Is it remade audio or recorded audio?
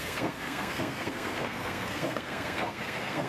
remade